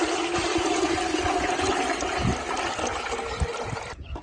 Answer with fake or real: real